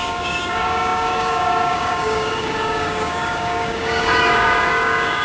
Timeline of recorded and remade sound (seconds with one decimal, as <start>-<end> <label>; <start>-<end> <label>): 0.0-5.2 remade